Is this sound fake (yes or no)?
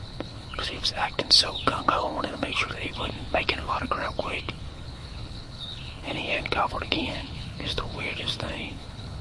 yes